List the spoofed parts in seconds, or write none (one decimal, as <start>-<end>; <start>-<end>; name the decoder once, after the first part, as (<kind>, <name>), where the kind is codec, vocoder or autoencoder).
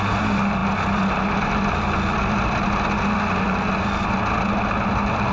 none